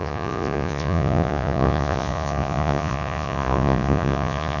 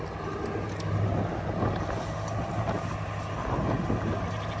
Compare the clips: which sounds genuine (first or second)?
second